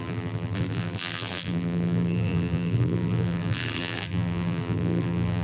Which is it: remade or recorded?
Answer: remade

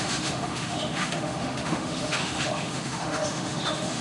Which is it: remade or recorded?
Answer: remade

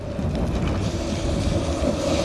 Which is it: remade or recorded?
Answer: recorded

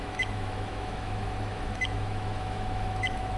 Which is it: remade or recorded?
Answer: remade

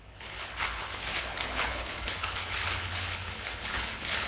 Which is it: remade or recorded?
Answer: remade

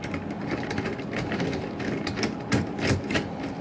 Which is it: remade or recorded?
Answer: recorded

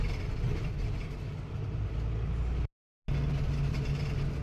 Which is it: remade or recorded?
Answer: recorded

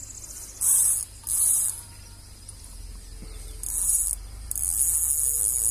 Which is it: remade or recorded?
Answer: recorded